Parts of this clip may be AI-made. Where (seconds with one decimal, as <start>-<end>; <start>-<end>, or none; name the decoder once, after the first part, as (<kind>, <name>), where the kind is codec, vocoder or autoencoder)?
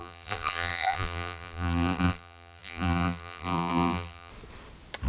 0.0-4.3 (vocoder, BigVGAN v2)